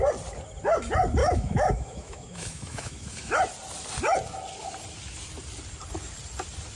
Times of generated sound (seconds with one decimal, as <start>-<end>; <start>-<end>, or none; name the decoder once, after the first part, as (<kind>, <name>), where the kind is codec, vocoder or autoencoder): 1.2-3.3 (autoencoder, DAC-VAE)